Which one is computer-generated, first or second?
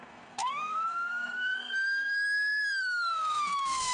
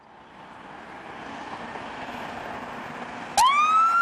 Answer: first